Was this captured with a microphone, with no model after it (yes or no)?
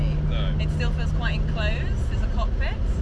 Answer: yes